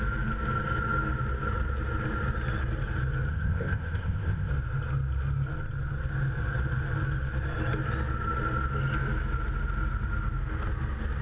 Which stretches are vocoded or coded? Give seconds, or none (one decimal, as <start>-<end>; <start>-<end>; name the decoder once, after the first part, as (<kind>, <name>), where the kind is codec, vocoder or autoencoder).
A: 3.3-4.5 (codec, ZipCodec)